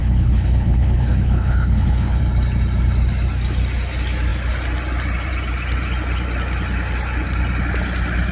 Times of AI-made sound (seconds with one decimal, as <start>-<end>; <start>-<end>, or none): 0.0-2.2